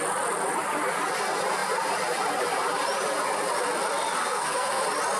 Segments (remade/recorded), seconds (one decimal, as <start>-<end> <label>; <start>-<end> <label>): 0.0-4.2 recorded; 4.2-4.8 remade; 4.8-5.2 recorded